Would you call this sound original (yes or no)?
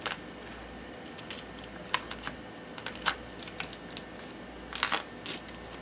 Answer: yes